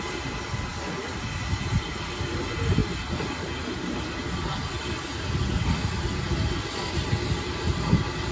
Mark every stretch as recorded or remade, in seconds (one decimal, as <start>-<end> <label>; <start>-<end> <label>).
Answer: 0.0-8.3 recorded